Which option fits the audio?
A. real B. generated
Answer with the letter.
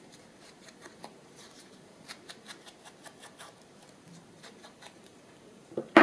B